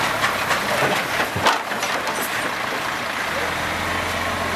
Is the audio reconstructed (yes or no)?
no